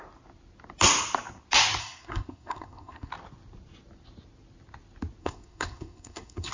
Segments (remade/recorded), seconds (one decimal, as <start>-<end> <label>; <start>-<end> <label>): 0.0-1.8 recorded; 1.8-3.1 remade; 3.1-5.2 recorded; 5.2-6.5 remade